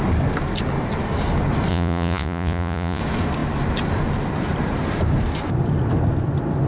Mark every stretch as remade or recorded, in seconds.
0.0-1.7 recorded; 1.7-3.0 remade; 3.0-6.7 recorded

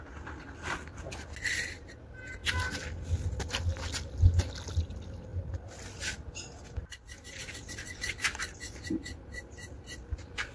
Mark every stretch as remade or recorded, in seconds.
0.0-10.5 recorded

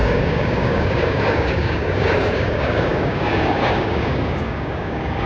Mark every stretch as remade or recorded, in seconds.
0.0-5.3 remade

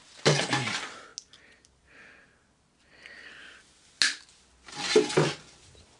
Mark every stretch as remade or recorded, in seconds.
0.0-6.0 recorded

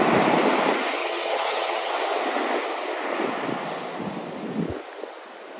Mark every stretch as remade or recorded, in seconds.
0.0-1.0 recorded; 1.0-1.9 remade; 1.9-5.6 recorded